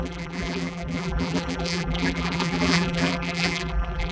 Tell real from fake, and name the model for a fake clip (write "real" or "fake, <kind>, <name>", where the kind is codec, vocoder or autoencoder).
fake, vocoder, BigVGAN v2